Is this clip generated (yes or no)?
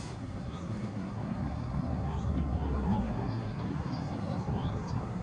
yes